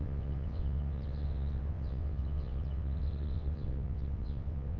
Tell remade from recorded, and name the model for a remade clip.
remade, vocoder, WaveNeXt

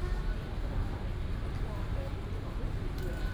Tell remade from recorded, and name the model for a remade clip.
recorded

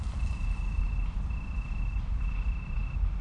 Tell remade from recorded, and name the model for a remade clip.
recorded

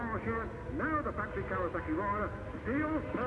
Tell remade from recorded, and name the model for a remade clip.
recorded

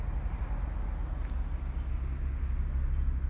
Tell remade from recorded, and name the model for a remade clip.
recorded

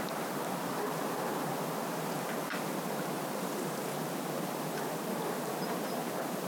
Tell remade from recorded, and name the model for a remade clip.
remade, vocoder, BigVGAN v2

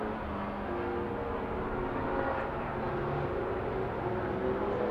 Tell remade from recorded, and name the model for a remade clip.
recorded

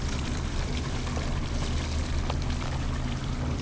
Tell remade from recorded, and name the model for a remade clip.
recorded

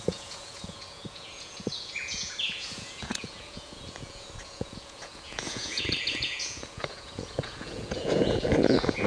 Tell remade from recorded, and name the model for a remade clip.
remade, vocoder, Vocos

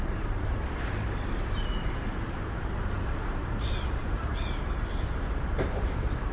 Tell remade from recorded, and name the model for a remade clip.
remade, vocoder, BigVGAN v2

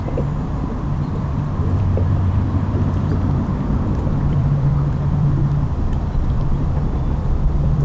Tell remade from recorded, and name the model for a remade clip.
remade, vocoder, BigVGAN v2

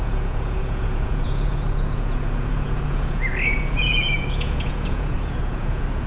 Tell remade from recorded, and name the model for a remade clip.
remade, vocoder, Vocos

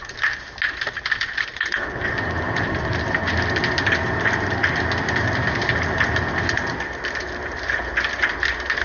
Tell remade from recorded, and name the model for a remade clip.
recorded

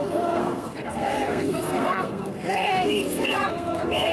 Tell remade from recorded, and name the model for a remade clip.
remade, codec, SNAC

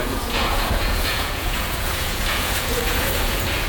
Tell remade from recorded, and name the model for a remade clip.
remade, vocoder, Vocos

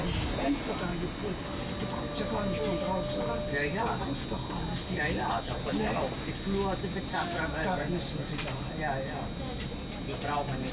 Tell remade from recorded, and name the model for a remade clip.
recorded